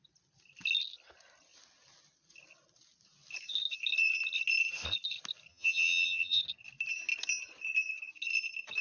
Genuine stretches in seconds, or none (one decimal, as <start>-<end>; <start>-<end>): 0.0-5.5; 6.4-8.8